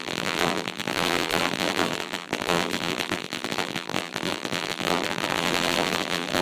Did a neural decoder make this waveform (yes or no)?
yes